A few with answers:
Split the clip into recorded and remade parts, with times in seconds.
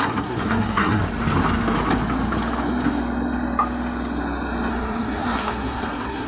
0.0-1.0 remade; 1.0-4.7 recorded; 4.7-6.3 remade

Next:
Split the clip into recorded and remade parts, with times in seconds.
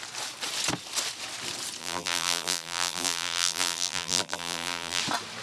0.0-1.8 recorded; 1.8-5.0 remade; 5.0-5.4 recorded